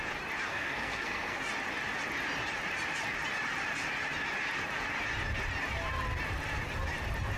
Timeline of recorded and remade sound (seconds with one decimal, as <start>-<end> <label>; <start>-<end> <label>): 0.0-0.5 recorded; 0.5-1.4 remade; 1.4-7.4 recorded